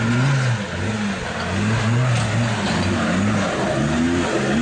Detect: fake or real real